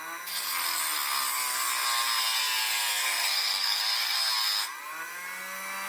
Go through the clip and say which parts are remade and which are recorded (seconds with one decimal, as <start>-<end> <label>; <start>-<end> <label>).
0.0-3.0 recorded; 3.0-3.8 remade; 3.8-5.9 recorded